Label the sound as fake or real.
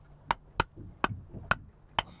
real